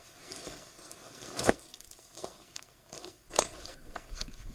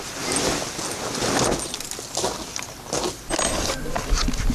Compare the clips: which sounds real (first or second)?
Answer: second